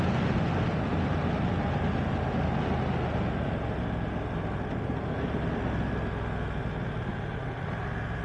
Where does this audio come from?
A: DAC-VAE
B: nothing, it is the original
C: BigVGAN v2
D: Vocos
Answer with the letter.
B